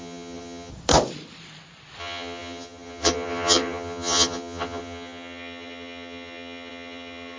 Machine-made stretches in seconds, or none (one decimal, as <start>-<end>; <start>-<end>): 0.0-0.7; 2.0-7.4

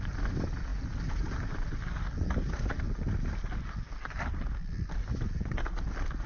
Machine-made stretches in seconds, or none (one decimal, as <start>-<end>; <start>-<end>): none

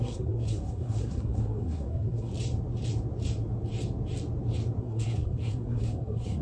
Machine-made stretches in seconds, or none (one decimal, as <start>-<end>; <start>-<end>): 0.0-2.3; 4.8-6.4

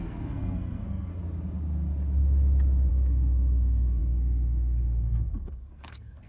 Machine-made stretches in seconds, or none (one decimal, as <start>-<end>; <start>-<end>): 0.0-1.1; 2.9-6.3